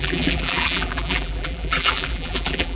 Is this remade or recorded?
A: remade